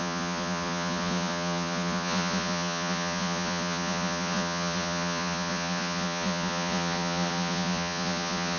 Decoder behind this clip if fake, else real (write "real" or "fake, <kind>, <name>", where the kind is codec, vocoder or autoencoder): fake, vocoder, Vocos